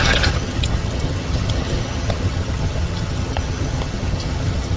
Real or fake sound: fake